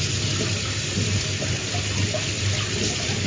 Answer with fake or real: fake